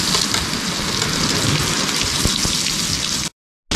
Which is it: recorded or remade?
recorded